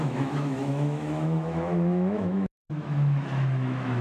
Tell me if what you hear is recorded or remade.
remade